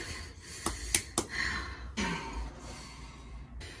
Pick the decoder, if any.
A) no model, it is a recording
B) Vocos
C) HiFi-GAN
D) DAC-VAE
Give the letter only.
A